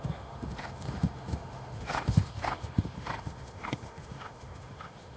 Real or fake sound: fake